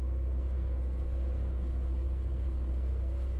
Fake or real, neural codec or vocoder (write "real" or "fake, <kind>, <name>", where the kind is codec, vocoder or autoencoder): fake, codec, SNAC